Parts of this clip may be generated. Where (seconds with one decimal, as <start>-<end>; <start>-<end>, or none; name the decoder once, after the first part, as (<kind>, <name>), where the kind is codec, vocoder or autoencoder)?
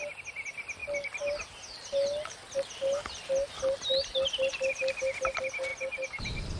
none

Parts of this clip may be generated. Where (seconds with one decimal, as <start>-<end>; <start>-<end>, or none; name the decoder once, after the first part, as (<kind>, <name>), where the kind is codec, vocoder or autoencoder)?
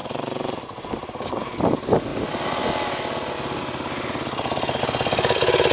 none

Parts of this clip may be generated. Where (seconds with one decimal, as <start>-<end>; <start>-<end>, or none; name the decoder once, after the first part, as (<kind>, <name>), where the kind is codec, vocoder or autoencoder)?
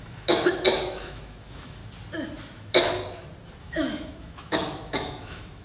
0.0-1.8 (autoencoder, DAC-VAE); 2.4-3.0; 3.6-5.6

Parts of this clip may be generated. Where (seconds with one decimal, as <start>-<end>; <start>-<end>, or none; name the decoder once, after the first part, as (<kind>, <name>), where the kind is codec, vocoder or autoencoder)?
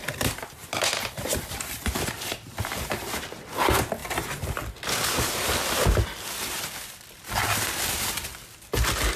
0.0-8.3 (vocoder, BigVGAN v2)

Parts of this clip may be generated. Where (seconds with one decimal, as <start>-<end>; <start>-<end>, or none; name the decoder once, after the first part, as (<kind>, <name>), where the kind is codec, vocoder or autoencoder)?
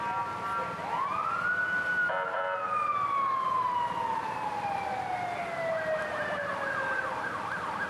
none